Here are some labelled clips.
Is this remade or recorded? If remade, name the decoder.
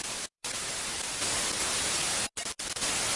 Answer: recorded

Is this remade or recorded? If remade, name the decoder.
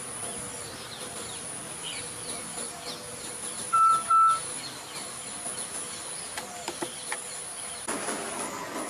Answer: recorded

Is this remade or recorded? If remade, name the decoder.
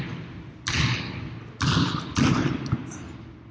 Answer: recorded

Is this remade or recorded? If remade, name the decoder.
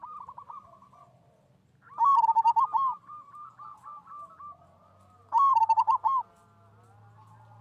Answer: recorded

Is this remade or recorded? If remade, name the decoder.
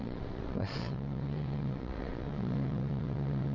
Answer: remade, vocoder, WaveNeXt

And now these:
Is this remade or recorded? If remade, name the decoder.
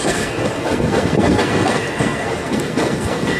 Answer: remade, codec, SNAC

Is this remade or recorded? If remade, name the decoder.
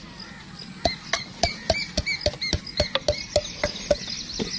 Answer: recorded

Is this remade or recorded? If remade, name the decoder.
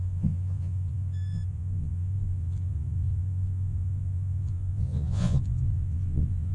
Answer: remade, vocoder, Vocos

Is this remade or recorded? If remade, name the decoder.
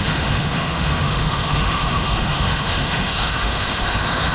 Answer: remade, autoencoder, DAC-VAE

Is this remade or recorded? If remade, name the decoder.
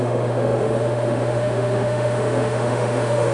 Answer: remade, autoencoder, DAC-VAE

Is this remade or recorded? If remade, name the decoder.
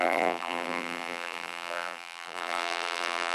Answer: remade, vocoder, BigVGAN v2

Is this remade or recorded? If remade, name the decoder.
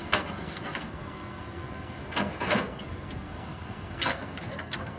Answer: remade, codec, SNAC